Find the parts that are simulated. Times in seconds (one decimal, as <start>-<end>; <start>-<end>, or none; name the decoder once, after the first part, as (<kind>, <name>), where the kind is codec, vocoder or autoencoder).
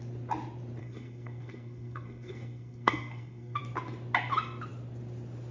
0.8-3.6 (codec, SNAC)